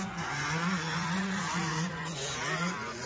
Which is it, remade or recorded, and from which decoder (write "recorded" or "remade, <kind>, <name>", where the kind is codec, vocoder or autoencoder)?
remade, vocoder, Vocos